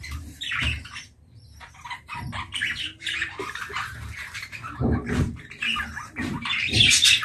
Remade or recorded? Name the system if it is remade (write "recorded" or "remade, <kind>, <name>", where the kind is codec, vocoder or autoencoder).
remade, vocoder, BigVGAN v2